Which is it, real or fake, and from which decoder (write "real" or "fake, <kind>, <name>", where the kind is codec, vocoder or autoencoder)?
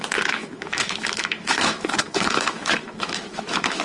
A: fake, autoencoder, DAC-VAE